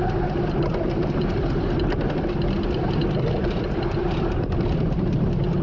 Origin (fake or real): real